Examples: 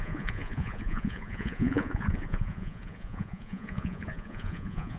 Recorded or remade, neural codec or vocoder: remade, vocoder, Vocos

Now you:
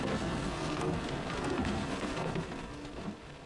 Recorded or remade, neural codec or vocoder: remade, codec, SNAC